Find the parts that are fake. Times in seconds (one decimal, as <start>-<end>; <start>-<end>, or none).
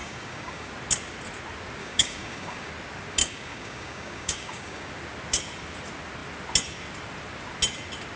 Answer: 0.0-0.7; 1.8-2.7; 3.2-4.9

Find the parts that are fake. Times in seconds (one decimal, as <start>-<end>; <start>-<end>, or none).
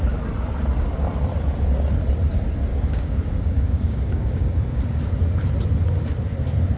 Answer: 2.7-4.8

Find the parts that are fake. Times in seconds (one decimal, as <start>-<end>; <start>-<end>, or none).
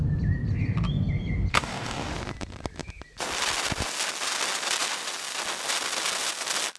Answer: 1.5-2.1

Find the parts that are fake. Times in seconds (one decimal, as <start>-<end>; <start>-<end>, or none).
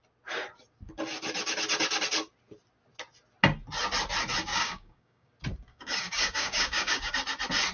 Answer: 4.5-5.3; 5.7-7.1